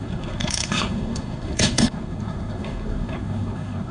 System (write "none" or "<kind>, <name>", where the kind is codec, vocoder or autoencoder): codec, SNAC